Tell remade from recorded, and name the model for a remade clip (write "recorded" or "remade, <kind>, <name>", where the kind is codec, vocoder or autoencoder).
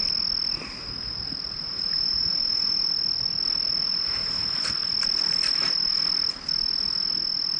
recorded